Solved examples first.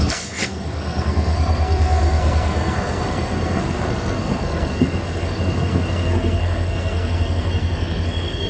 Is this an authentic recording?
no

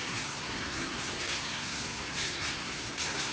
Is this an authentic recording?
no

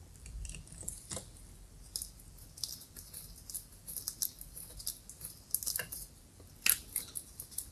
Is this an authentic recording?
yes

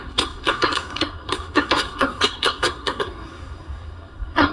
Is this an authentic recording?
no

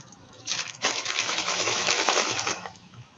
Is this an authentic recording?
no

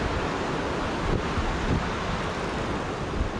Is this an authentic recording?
yes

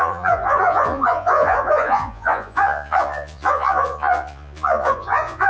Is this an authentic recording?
no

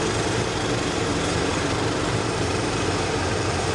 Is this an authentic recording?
no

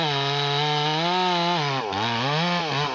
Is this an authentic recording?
yes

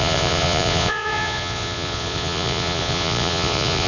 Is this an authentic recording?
no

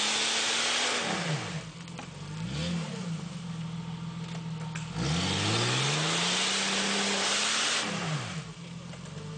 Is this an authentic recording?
yes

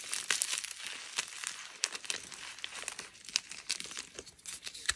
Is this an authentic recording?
yes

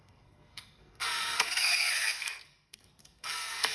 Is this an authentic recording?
no